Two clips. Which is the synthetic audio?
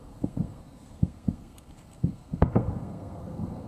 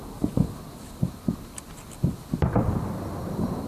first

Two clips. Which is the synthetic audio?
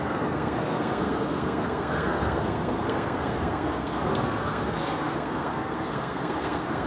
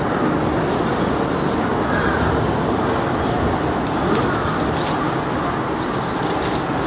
first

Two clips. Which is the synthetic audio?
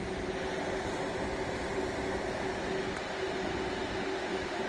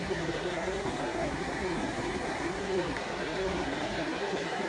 second